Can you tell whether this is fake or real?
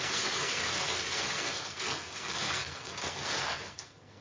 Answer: fake